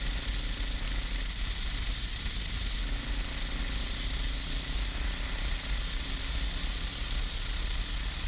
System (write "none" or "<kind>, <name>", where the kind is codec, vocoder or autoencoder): none